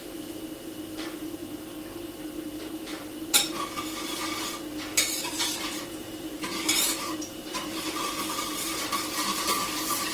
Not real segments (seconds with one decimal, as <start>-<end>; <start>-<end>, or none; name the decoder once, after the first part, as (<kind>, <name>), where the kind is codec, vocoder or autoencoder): 0.0-1.4 (vocoder, BigVGAN v2); 2.7-4.2; 4.9-10.1